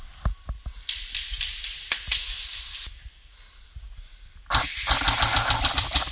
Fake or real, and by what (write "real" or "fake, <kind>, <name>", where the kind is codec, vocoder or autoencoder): real